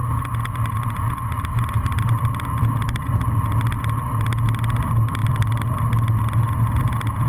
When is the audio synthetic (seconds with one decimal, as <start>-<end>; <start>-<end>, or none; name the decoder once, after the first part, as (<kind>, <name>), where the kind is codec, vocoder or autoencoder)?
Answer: 5.2-5.8 (vocoder, BigVGAN v2)